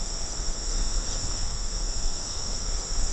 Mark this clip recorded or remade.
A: remade